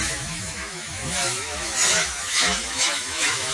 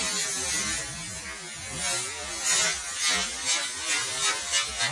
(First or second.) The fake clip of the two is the first